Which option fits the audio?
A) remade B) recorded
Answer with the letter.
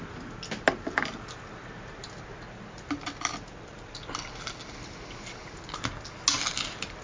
B